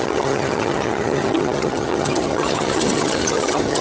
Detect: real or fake fake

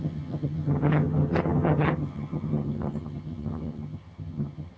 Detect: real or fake fake